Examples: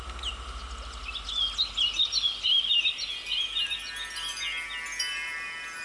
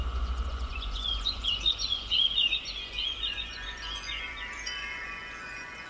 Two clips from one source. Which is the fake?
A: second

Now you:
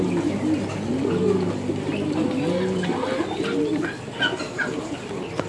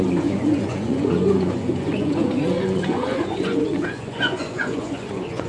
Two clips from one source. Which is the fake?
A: second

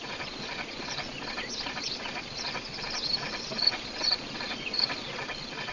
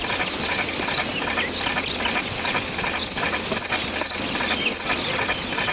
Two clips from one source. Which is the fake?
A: first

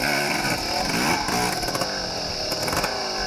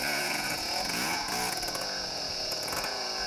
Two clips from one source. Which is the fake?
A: second